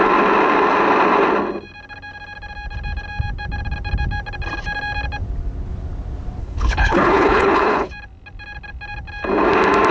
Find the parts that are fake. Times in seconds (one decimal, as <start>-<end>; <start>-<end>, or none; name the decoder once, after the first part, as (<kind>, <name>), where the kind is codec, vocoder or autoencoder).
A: 6.4-7.9 (codec, HILCodec)